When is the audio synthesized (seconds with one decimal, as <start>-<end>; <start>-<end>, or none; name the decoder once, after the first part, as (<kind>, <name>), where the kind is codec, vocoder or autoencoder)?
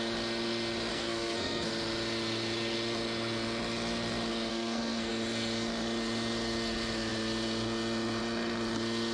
0.9-1.7 (codec, SNAC); 4.5-5.1